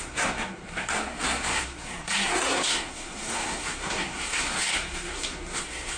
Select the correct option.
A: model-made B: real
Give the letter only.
A